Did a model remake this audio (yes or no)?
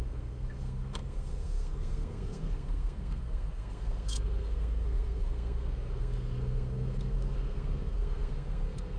yes